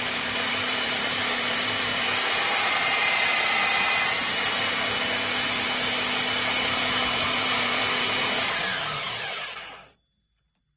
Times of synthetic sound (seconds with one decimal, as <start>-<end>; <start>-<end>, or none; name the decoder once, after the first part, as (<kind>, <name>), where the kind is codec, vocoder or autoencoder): 0.0-3.3 (vocoder, BigVGAN v2); 7.1-10.8